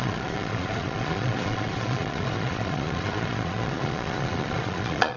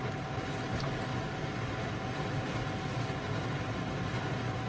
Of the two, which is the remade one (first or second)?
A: first